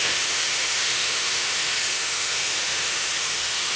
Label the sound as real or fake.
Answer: fake